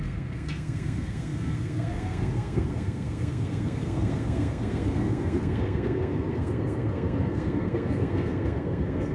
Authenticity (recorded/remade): remade